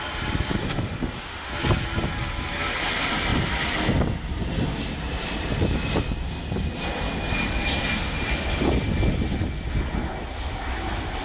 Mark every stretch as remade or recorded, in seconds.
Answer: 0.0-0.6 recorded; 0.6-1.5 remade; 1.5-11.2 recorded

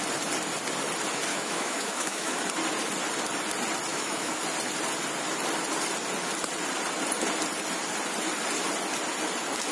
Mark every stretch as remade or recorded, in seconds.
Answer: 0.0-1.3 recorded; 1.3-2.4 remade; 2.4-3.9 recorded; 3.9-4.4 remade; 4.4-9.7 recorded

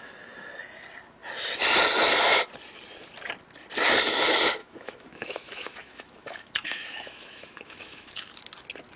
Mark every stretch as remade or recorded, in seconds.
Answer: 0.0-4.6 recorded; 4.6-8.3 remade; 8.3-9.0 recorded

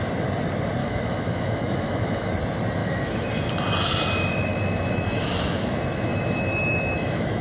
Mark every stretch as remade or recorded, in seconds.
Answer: 0.0-0.8 recorded; 0.8-2.3 remade; 2.3-2.8 recorded; 2.8-3.5 remade; 3.5-4.5 recorded; 4.5-7.4 remade